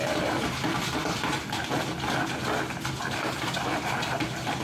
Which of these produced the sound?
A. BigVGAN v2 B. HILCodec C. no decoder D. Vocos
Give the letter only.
C